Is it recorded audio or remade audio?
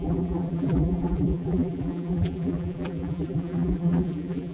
remade